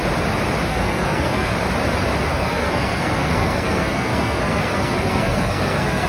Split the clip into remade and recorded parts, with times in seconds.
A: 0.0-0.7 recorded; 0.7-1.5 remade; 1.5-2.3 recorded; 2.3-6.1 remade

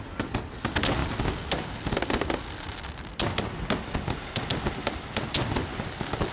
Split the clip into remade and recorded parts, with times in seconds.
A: 0.0-6.3 recorded

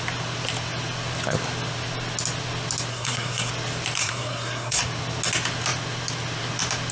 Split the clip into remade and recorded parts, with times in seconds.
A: 0.0-2.9 recorded; 2.9-3.5 remade; 3.5-4.0 recorded; 4.0-4.8 remade; 4.8-6.9 recorded

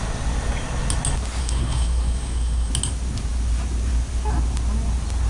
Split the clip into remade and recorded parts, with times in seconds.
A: 0.0-1.4 recorded; 1.4-2.7 remade; 2.7-5.3 recorded

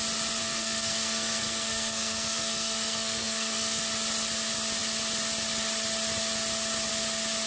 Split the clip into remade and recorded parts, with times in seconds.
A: 0.0-0.4 recorded; 0.4-3.8 remade; 3.8-7.5 recorded

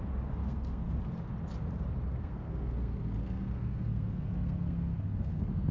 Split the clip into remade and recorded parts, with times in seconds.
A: 0.0-0.4 recorded; 0.4-0.9 remade; 0.9-2.2 recorded; 2.2-5.7 remade

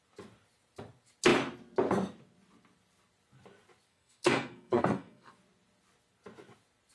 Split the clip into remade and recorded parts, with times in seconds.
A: 0.0-3.9 recorded; 3.9-5.3 remade; 5.3-6.9 recorded